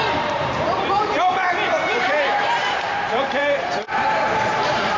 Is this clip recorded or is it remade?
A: remade